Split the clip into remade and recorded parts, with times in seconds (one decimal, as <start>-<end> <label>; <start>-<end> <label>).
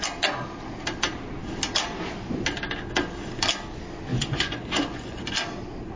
0.0-4.1 recorded; 4.1-5.3 remade; 5.3-6.0 recorded